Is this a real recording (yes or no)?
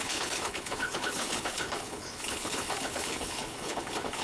no